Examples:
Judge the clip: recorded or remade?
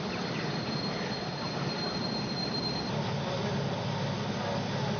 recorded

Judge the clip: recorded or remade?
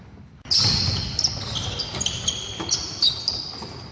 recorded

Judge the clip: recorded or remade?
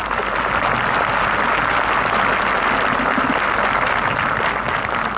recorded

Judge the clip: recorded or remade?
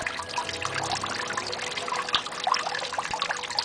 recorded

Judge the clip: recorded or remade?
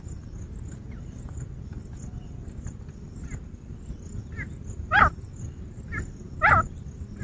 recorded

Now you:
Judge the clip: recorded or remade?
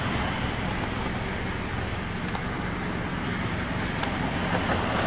recorded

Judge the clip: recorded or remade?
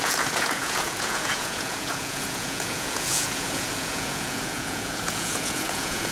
remade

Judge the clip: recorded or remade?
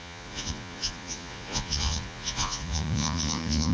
remade